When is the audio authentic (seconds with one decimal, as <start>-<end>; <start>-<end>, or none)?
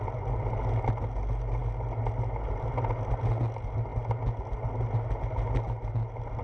0.0-6.4